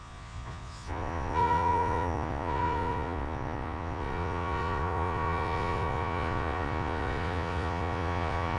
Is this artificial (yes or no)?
yes